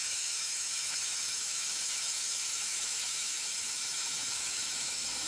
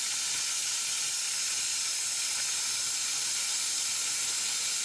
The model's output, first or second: first